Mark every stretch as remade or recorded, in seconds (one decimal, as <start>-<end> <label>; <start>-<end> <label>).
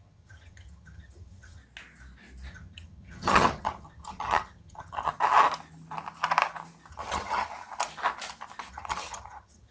0.0-1.6 remade; 1.6-2.5 recorded; 2.5-5.1 remade; 5.1-6.9 recorded; 6.9-7.5 remade; 7.5-8.7 recorded; 8.7-9.7 remade